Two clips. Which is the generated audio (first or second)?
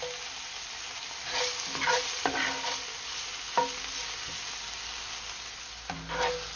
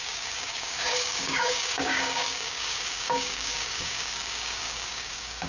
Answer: second